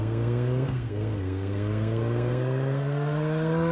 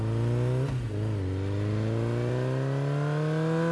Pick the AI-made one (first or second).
first